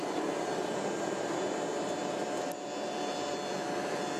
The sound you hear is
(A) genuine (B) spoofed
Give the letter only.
A